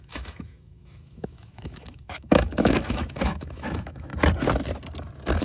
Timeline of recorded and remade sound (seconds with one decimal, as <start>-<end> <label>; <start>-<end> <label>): 0.0-4.1 remade; 4.1-5.4 recorded